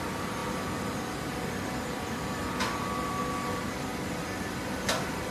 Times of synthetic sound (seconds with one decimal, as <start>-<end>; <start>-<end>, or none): 0.0-3.9; 4.6-5.3